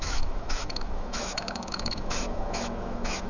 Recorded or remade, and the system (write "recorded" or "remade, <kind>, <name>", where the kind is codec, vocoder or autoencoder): remade, autoencoder, DAC-VAE